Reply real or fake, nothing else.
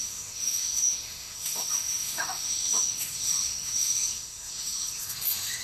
fake